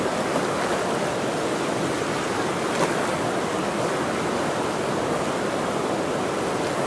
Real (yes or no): yes